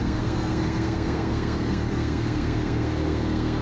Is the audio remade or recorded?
remade